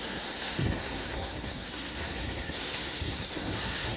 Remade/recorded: remade